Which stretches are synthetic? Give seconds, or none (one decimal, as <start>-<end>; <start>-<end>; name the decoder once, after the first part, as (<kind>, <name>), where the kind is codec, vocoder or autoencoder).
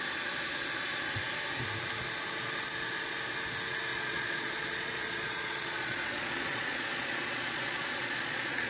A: 3.9-8.7 (vocoder, Vocos)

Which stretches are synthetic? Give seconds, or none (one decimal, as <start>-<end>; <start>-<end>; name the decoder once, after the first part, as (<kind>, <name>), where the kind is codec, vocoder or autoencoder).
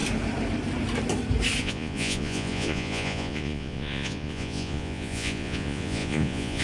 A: 1.6-6.6 (vocoder, Vocos)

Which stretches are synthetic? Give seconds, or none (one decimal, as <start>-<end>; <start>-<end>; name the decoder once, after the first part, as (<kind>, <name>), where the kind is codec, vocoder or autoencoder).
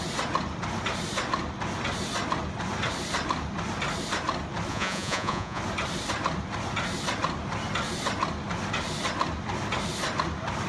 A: 4.7-5.6 (vocoder, Vocos)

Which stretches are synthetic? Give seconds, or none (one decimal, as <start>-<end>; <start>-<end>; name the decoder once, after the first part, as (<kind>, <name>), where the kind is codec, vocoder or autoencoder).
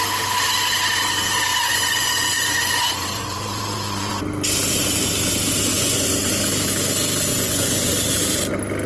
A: 1.5-4.1 (vocoder, Vocos); 5.7-6.3; 7.3-7.9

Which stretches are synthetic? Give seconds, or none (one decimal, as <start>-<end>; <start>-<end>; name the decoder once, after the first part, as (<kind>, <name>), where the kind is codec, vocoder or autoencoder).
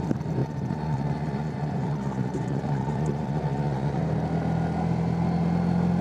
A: 0.4-4.0 (vocoder, Vocos)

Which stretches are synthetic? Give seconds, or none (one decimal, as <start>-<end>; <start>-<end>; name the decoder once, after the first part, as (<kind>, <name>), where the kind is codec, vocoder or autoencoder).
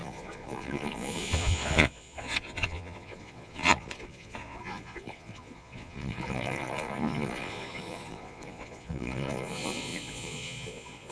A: 0.0-11.1 (vocoder, Vocos)